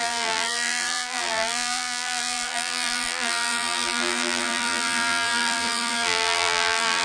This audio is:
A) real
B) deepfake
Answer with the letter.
B